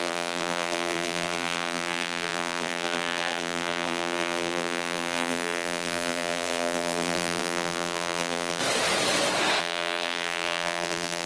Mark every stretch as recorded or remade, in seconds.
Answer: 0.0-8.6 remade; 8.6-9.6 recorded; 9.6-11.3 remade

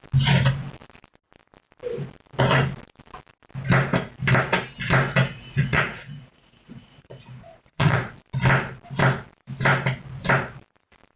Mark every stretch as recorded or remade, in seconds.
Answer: 0.0-5.5 recorded; 5.5-8.1 remade; 8.1-11.2 recorded